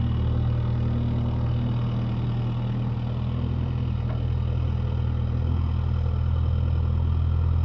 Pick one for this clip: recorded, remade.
recorded